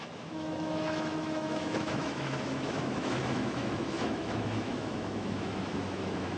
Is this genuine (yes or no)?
no